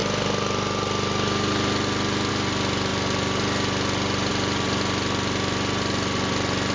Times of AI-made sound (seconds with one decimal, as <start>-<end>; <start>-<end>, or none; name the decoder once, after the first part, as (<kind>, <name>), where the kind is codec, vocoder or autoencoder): none